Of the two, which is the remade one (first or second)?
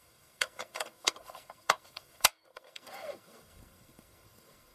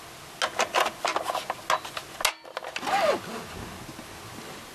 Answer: first